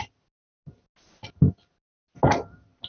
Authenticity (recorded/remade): recorded